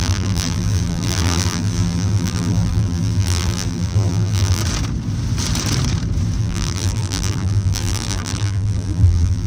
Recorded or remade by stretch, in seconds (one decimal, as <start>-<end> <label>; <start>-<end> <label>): 0.0-4.6 remade; 4.6-6.4 recorded; 6.4-9.5 remade